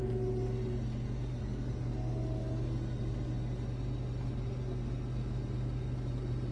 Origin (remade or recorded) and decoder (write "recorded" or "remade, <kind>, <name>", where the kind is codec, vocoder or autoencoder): recorded